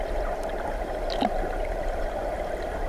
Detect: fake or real fake